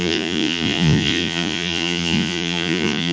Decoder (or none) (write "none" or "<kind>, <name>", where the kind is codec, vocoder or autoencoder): vocoder, Vocos